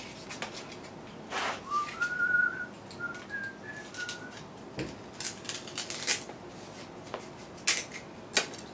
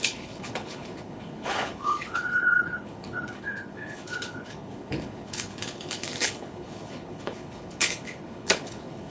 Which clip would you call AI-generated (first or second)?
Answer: second